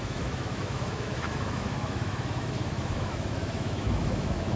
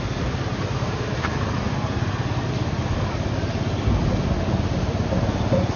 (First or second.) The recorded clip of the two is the second